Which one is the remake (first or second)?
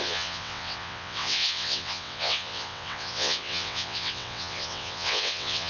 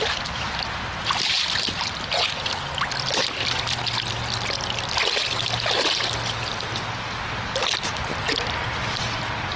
first